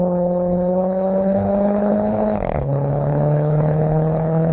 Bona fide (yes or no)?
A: no